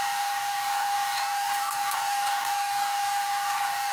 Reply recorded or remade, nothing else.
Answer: remade